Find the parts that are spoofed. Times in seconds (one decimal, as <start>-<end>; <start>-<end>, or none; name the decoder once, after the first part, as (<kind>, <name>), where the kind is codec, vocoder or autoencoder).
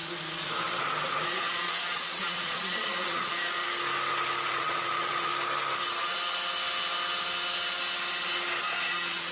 1.4-3.6 (vocoder, Vocos); 4.5-5.3; 8.6-9.3